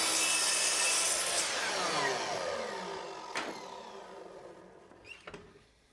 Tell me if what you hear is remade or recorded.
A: recorded